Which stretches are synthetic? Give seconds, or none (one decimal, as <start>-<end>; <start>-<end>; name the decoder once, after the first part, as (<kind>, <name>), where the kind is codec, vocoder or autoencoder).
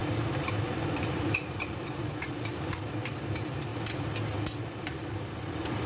0.0-3.7 (vocoder, BigVGAN v2); 4.6-5.9